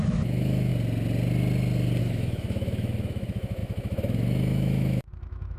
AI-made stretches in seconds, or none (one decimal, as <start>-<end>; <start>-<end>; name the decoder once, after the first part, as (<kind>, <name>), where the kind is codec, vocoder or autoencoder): 0.0-0.7 (autoencoder, DAC-VAE); 2.0-5.6

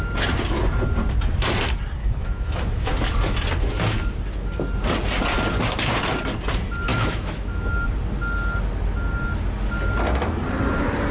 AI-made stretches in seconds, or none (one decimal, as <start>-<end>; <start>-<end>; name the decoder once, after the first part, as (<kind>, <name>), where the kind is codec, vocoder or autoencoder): 2.0-2.9 (autoencoder, DAC-VAE); 6.9-7.9

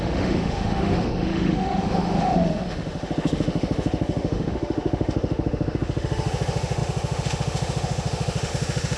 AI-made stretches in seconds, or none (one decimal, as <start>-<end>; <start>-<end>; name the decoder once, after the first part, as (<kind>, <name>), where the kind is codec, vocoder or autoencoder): 0.0-9.0 (autoencoder, DAC-VAE)